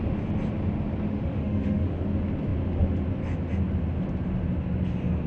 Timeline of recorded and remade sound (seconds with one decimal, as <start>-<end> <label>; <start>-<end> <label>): 0.0-1.1 recorded; 1.1-2.0 remade; 2.0-5.3 recorded